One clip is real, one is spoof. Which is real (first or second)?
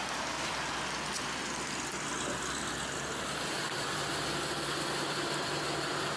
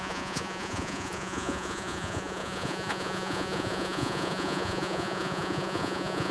first